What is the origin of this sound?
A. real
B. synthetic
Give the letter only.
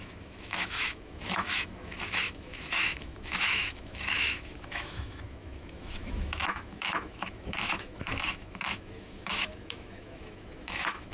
B